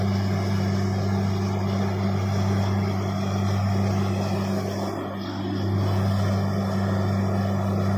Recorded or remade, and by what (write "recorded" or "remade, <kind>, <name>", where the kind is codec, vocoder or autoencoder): recorded